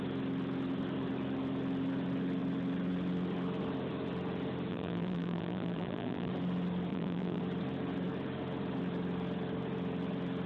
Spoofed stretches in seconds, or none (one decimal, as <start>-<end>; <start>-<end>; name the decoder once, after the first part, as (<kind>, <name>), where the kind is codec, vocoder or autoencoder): 4.7-6.3 (vocoder, BigVGAN v2); 6.9-7.4